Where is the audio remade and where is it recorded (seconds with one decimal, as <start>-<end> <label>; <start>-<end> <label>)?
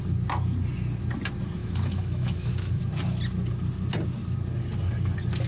0.0-1.6 recorded; 1.6-2.8 remade; 2.8-5.5 recorded